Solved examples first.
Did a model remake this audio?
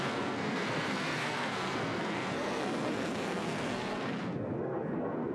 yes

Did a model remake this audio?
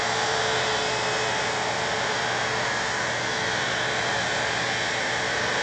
no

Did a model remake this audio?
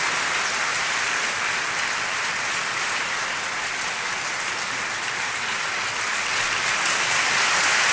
no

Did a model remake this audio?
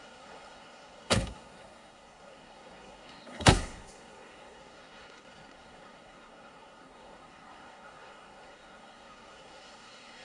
yes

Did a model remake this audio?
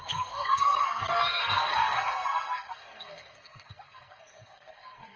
yes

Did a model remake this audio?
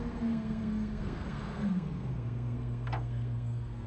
yes